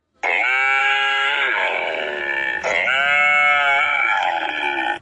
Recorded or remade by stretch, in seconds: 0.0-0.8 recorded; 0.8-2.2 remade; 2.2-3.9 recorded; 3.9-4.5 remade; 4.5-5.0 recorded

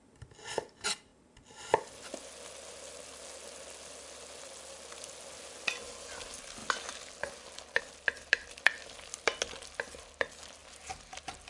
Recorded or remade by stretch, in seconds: 0.0-1.1 recorded; 1.1-2.3 remade; 2.3-11.5 recorded

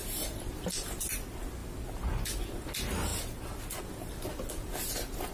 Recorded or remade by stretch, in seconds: 0.0-1.0 remade; 1.0-5.3 recorded

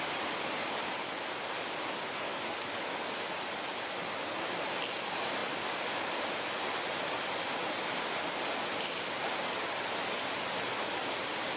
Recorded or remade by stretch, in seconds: 0.0-11.6 recorded